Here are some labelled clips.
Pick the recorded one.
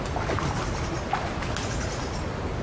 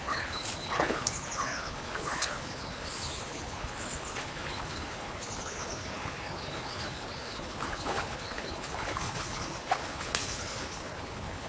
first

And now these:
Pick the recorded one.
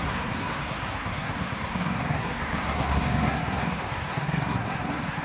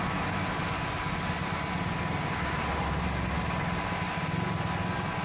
second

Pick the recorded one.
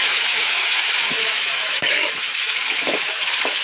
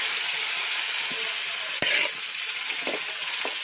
second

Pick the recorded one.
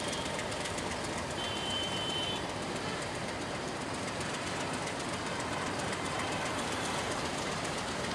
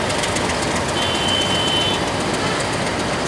second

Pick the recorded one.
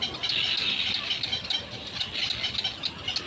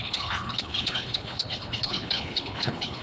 first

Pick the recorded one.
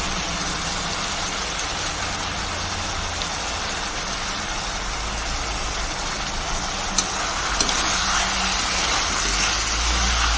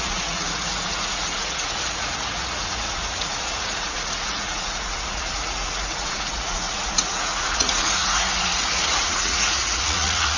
first